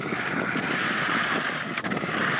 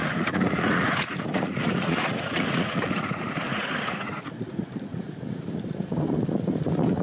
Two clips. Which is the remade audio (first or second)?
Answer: second